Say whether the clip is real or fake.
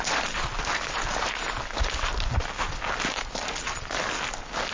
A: real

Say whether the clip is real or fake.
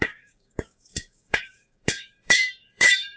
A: fake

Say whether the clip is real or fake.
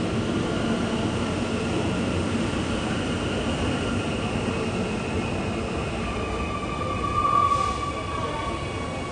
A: real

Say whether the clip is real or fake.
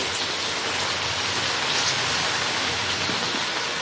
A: real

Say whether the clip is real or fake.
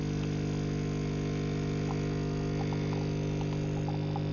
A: real